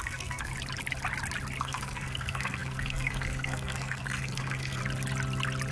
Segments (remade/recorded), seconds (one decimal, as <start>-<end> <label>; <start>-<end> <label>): 0.0-0.5 remade; 0.5-1.6 recorded; 1.6-4.8 remade; 4.8-5.7 recorded